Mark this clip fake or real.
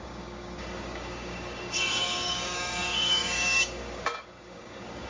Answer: fake